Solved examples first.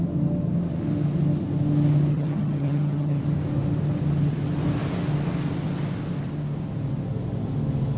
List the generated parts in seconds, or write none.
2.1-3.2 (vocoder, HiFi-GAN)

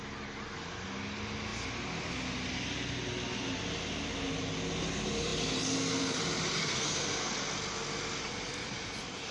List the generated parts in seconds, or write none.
6.6-7.3 (codec, SNAC)